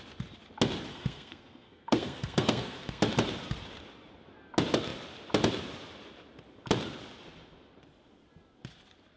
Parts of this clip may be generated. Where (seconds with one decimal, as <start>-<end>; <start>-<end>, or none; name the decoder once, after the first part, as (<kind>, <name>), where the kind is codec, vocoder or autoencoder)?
0.9-3.0 (codec, SNAC)